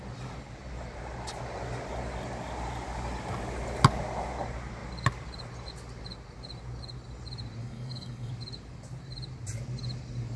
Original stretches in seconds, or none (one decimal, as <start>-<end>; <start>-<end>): 0.0-7.6; 8.3-10.4